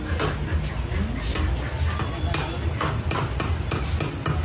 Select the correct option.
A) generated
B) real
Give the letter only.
B